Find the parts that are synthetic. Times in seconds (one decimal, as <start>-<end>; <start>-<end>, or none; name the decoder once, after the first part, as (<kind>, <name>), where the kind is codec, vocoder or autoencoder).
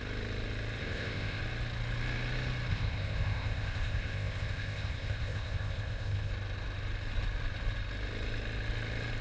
0.8-1.4 (codec, ZipCodec); 2.7-6.3